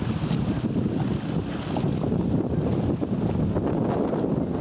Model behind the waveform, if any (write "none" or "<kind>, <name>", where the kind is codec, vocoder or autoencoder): none